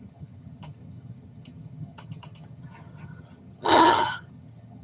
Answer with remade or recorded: remade